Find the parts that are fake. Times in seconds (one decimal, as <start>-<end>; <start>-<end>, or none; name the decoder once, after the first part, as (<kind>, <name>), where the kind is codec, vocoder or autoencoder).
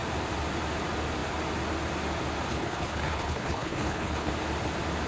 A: 2.5-4.3 (codec, HILCodec)